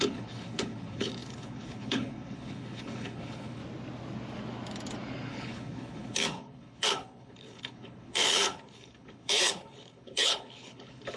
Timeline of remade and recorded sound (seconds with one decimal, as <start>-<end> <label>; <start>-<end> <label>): 0.0-3.6 remade; 3.6-5.3 recorded; 5.3-11.2 remade